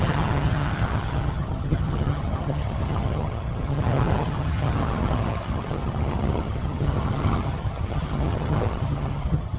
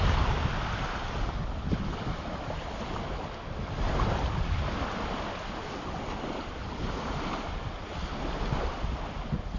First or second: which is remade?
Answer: first